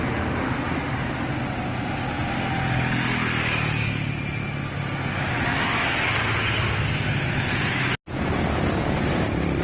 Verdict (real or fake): real